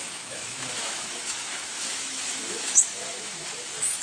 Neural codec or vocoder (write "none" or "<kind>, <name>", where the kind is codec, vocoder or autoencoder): autoencoder, DAC-VAE